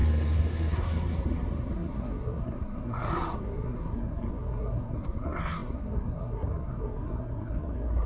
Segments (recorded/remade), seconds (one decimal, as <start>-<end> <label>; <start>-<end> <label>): 0.0-8.1 remade